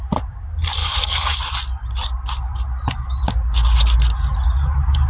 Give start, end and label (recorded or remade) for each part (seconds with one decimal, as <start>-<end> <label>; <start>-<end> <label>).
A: 0.0-0.8 recorded; 0.8-1.4 remade; 1.4-5.1 recorded